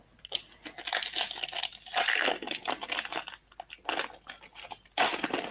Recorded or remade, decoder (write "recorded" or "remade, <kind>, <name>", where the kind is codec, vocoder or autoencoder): recorded